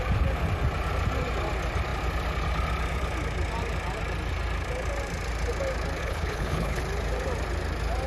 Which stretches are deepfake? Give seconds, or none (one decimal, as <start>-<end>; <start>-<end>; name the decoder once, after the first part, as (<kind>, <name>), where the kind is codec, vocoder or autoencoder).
6.0-6.8 (codec, HILCodec)